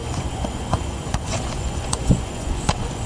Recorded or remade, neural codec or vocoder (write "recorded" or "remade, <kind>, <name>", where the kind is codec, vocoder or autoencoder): remade, vocoder, Vocos